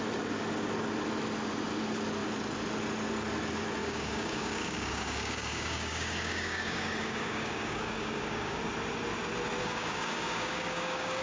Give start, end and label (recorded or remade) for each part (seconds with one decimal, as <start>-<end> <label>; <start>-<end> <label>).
0.0-3.8 recorded; 3.8-8.6 remade; 8.6-9.6 recorded; 9.6-11.2 remade